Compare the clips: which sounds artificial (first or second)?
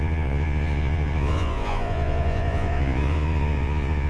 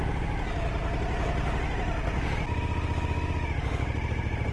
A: first